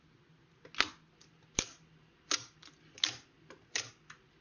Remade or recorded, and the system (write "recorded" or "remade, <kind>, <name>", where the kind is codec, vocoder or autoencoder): recorded